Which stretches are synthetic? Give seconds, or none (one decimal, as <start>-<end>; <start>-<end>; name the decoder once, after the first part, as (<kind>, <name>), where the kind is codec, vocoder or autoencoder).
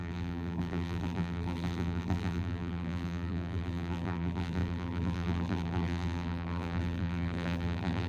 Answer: 0.0-8.1 (vocoder, BigVGAN v2)